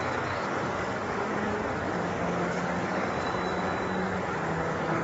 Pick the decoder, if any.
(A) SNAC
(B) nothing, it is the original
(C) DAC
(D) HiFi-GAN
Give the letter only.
C